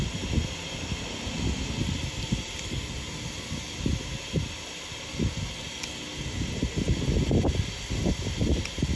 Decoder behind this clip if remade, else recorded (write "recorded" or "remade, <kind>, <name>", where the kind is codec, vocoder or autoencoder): recorded